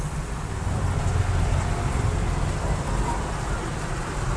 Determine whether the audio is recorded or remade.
recorded